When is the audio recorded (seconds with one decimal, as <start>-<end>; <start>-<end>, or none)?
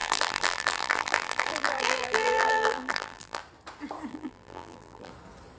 3.4-4.1; 5.1-5.6